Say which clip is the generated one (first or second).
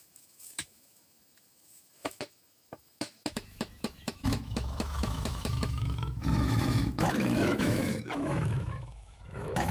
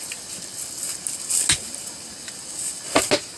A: first